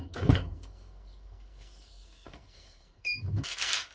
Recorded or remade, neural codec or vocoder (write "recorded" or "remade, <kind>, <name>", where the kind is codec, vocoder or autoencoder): remade, codec, SNAC